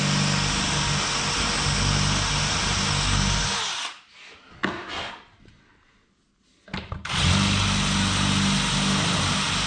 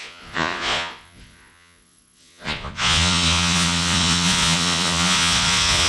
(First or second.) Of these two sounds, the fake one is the second